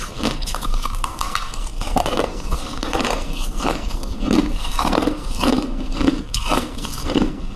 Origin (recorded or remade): remade